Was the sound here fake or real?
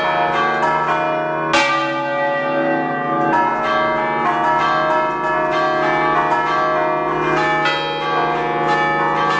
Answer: real